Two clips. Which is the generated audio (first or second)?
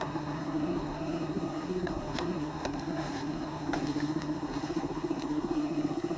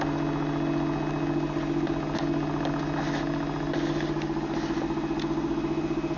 first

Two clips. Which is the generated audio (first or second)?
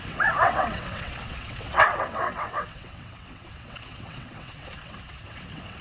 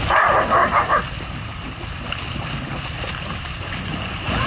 first